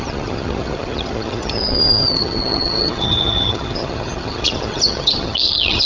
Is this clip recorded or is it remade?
remade